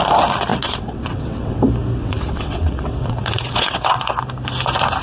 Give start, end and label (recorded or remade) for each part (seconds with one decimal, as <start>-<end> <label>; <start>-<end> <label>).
0.0-0.5 recorded; 0.5-1.6 remade; 1.6-2.0 recorded; 2.0-4.2 remade; 4.2-5.0 recorded

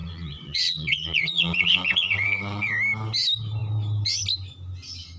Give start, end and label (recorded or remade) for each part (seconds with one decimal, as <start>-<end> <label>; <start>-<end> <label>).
0.0-2.7 remade; 2.7-5.2 recorded

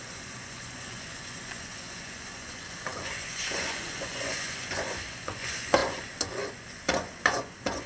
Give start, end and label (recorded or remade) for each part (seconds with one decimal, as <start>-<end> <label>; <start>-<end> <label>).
0.0-7.9 remade